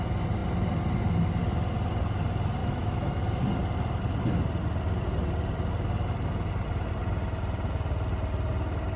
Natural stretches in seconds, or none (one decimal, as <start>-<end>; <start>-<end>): 0.0-2.6; 3.2-9.0